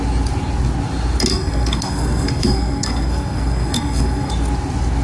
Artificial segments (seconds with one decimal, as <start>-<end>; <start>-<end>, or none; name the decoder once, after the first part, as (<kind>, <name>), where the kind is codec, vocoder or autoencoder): 1.3-4.3 (codec, SNAC)